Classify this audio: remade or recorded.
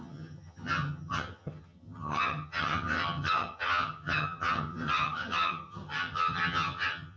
remade